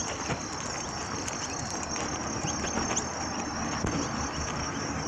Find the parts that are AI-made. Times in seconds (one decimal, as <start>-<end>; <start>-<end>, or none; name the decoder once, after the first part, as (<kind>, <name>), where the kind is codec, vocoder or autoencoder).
none